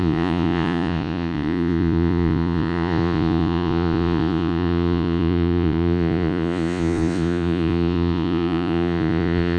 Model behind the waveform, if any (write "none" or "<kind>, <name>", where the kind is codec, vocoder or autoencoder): vocoder, Vocos